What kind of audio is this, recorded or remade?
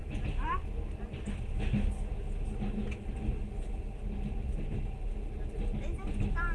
recorded